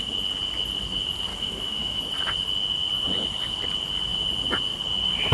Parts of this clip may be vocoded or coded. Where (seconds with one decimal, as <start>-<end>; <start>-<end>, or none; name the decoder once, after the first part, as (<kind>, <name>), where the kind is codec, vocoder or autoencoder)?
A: 1.3-2.0 (autoencoder, DAC-VAE)